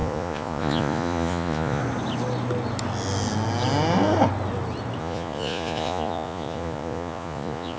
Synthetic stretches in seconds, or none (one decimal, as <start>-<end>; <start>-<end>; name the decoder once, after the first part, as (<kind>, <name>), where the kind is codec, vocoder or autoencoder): 0.0-1.8 (vocoder, Vocos); 5.0-7.8